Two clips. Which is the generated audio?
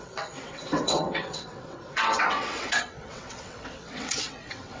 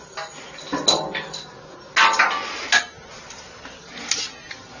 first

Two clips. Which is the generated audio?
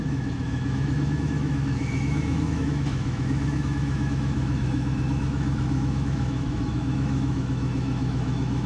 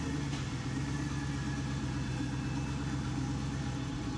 first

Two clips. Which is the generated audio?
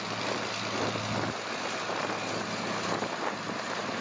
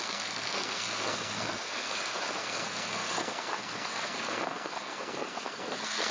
second